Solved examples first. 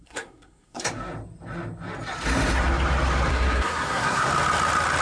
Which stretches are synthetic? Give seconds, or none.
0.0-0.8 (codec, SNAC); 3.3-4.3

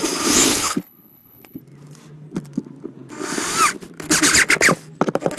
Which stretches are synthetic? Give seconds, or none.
0.5-1.6 (codec, HILCodec)

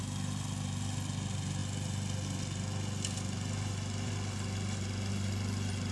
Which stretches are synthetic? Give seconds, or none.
none

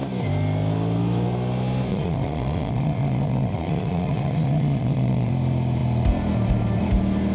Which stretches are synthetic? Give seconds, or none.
1.9-5.3 (vocoder, Vocos)

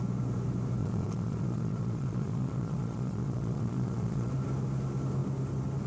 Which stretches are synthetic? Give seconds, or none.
0.8-4.3 (vocoder, Vocos)

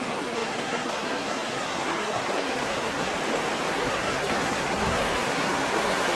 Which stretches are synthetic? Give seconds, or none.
0.0-3.1 (codec, SNAC); 3.7-6.2

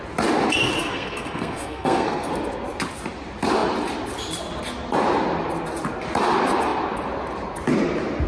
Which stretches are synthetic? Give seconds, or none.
0.8-2.3 (codec, SNAC)

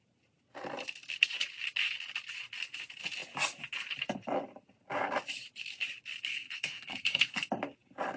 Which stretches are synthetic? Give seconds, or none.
6.3-7.5 (codec, SNAC)